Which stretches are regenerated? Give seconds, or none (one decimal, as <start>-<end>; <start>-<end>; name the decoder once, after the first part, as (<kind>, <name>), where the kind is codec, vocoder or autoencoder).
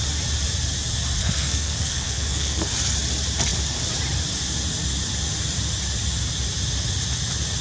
1.2-2.7 (codec, SNAC)